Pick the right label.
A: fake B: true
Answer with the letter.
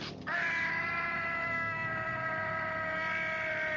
B